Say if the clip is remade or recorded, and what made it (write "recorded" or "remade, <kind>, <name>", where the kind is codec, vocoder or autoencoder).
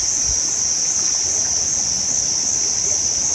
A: recorded